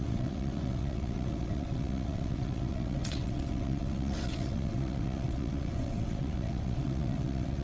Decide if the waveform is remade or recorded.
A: remade